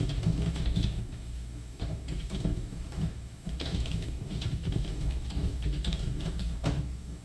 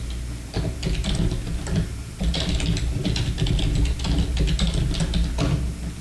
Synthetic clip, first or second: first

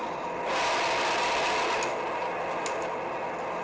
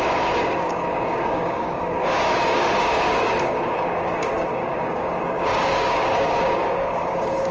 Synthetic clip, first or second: second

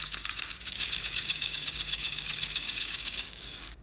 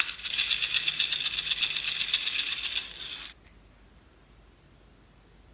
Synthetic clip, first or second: first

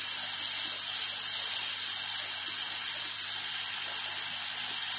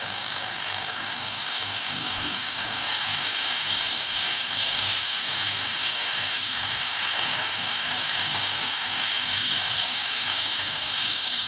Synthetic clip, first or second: second